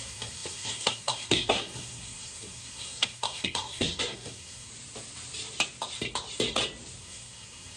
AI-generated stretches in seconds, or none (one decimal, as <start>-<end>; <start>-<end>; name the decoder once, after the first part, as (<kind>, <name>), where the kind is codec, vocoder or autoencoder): 0.0-4.7 (codec, SNAC); 7.0-7.8